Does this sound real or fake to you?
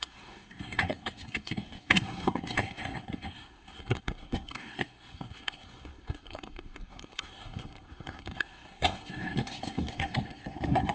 fake